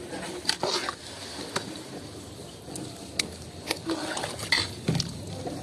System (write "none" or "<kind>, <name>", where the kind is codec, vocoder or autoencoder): none